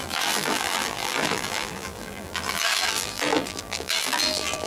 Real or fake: fake